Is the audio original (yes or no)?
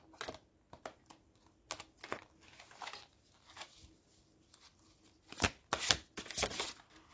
yes